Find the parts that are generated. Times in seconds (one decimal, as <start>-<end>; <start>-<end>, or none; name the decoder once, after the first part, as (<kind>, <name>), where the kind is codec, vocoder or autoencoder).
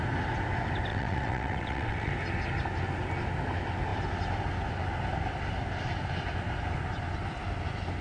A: 0.9-2.1 (vocoder, WaveNeXt)